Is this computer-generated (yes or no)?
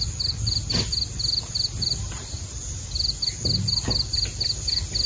no